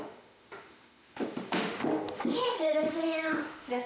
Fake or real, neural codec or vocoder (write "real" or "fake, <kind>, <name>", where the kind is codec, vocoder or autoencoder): fake, autoencoder, DAC-VAE